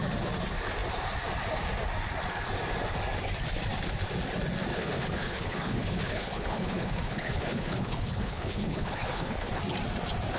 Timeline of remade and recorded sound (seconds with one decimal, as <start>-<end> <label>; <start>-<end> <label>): 0.0-4.7 recorded; 4.7-9.6 remade; 9.6-10.4 recorded

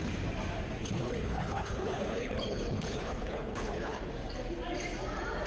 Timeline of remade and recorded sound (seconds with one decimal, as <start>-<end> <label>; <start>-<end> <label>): 0.0-0.8 recorded; 0.8-4.1 remade; 4.1-5.5 recorded